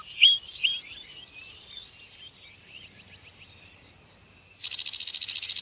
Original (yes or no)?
yes